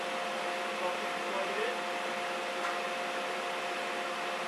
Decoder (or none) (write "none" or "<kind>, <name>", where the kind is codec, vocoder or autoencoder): none